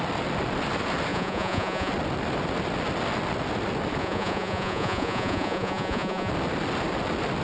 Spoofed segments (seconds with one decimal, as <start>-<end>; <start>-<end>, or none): 1.1-1.9; 4.0-6.3